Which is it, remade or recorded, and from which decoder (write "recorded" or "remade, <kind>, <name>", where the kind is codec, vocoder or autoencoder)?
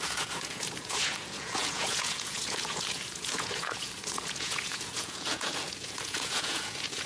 remade, vocoder, Vocos